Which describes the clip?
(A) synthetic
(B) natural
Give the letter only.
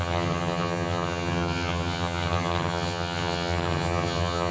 A